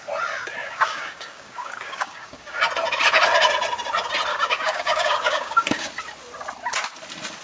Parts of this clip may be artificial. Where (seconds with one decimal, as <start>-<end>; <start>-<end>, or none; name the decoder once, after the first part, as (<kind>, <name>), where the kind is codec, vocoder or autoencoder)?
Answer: 0.6-2.6 (codec, DAC); 4.3-5.9